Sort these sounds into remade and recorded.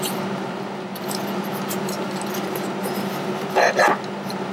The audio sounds recorded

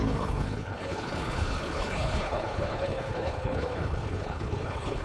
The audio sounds remade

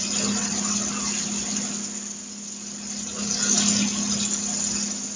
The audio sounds recorded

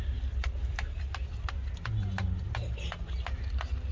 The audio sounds recorded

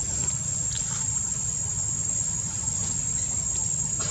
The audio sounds recorded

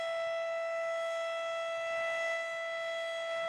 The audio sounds recorded